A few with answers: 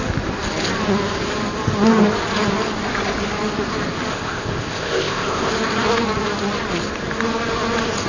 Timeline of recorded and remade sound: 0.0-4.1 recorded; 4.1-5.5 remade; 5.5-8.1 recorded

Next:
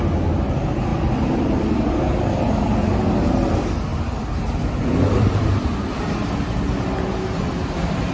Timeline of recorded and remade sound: 0.0-0.9 recorded; 0.9-2.6 remade; 2.6-3.9 recorded; 3.9-6.0 remade; 6.0-8.1 recorded

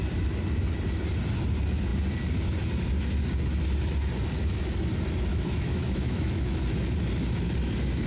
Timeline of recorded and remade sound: 0.0-5.3 recorded; 5.3-6.6 remade; 6.6-8.1 recorded

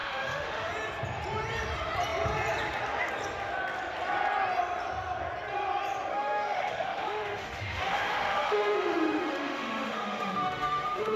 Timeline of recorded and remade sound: 0.0-0.7 remade; 0.7-6.1 recorded; 6.1-11.2 remade

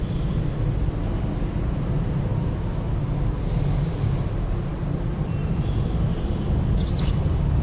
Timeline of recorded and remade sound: 0.0-7.6 recorded

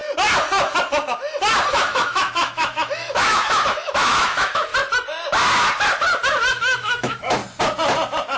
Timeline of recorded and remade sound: 0.0-1.7 recorded; 1.7-4.7 remade; 4.7-6.5 recorded; 6.5-7.4 remade; 7.4-8.4 recorded